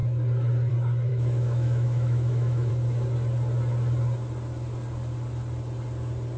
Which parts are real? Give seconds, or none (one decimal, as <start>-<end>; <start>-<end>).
0.0-1.1; 2.7-6.4